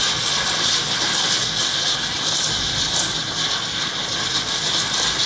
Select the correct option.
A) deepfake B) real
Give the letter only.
B